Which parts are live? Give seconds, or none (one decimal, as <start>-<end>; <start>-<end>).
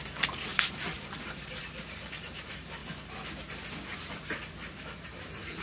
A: 2.8-4.5